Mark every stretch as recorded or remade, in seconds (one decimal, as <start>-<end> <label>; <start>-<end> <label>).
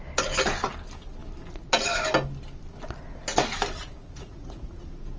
0.0-3.8 recorded; 3.8-4.8 remade; 4.8-5.2 recorded